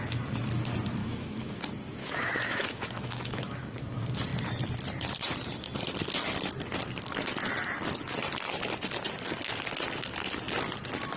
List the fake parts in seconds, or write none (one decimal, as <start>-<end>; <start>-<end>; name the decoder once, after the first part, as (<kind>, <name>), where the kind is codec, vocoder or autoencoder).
1.0-1.6 (autoencoder, DAC-VAE); 2.0-3.8